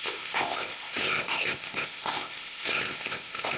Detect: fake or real fake